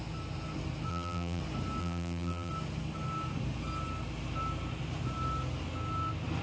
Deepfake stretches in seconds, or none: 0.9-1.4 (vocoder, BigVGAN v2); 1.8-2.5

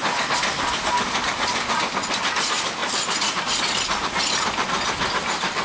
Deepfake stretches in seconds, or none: 2.8-3.4 (vocoder, BigVGAN v2)